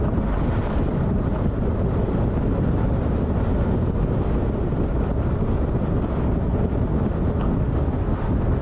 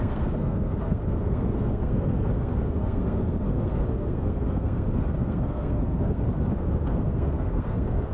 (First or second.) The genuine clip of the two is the first